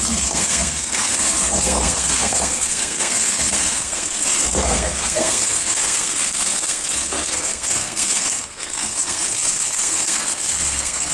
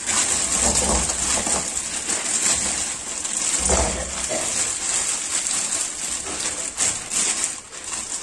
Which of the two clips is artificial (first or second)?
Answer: first